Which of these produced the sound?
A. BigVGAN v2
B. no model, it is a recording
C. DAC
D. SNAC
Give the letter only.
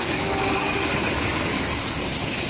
C